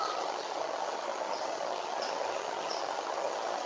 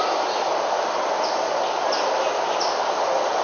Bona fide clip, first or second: second